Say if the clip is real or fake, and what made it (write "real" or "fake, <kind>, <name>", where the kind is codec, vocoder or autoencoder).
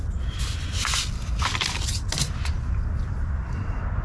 real